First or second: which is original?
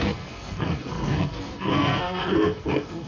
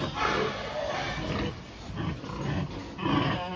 second